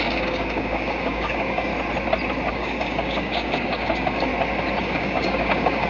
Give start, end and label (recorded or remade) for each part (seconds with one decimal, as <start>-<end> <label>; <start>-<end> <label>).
0.0-1.7 remade; 1.7-2.5 recorded; 2.5-4.3 remade; 4.3-4.8 recorded; 4.8-5.9 remade